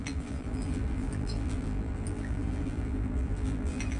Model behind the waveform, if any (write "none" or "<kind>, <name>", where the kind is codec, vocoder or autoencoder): vocoder, BigVGAN v2